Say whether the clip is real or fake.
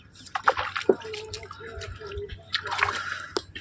real